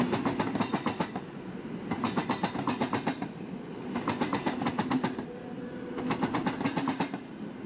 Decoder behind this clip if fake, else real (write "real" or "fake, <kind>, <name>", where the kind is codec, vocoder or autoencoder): real